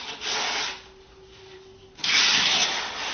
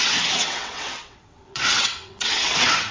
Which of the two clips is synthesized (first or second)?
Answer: second